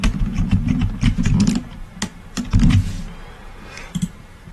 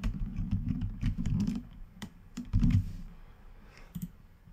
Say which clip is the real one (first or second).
first